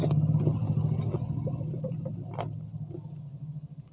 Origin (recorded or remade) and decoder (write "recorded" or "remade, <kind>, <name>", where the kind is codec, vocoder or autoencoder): recorded